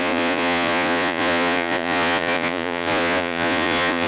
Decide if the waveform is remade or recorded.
remade